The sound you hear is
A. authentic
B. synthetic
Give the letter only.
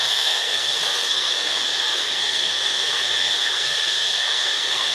B